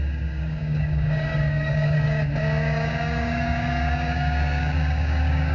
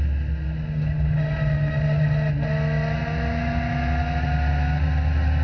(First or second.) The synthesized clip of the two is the first